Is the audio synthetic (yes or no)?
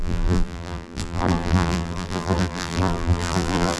yes